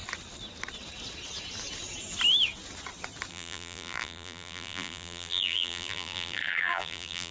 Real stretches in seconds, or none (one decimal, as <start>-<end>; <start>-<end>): 0.0-3.3